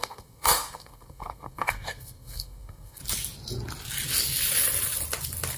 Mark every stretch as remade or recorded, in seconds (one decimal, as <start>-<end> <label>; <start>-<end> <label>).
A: 0.0-3.0 remade; 3.0-5.6 recorded